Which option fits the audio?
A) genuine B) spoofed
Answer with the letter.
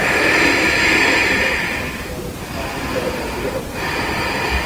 A